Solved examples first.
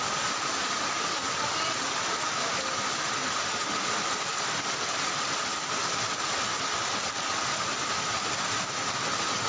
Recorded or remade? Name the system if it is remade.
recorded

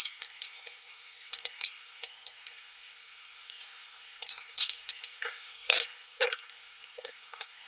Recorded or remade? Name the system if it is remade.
remade, codec, SNAC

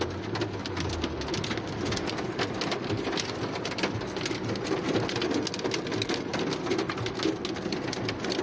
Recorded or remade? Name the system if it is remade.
recorded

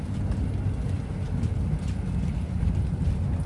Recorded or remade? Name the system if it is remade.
recorded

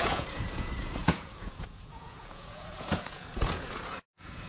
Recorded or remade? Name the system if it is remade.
remade, vocoder, Vocos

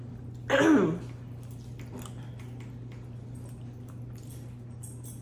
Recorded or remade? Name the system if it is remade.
recorded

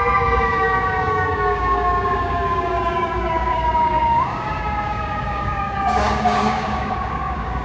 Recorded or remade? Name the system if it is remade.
remade, codec, DAC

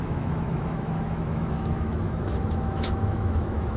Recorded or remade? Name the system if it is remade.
remade, autoencoder, DAC-VAE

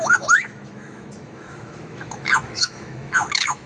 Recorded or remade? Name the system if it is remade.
remade, autoencoder, DAC-VAE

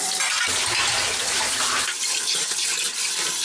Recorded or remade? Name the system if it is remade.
recorded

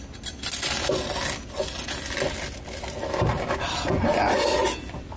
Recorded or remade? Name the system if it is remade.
recorded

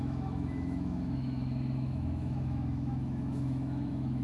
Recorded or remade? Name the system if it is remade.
remade, autoencoder, DAC-VAE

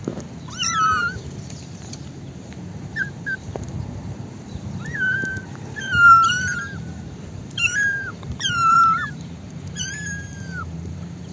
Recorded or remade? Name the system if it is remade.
remade, vocoder, BigVGAN v2